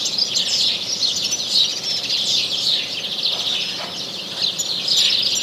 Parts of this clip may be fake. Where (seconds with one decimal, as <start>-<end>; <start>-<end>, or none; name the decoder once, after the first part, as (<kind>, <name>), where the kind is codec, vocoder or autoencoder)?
1.7-2.8 (vocoder, BigVGAN v2)